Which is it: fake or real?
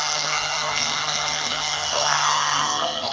fake